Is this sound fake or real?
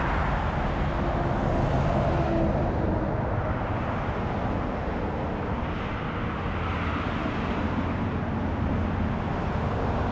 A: real